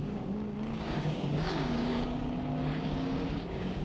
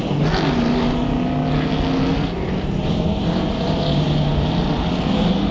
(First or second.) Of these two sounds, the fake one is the first